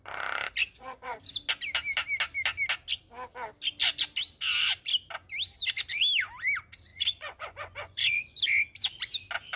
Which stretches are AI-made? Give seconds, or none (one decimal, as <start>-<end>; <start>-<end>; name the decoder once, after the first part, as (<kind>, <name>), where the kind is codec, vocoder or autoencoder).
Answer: 0.6-1.2 (vocoder, Vocos); 6.9-8.4